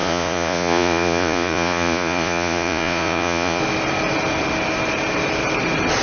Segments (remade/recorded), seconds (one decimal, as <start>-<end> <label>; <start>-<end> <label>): 0.0-3.6 remade; 3.6-6.0 recorded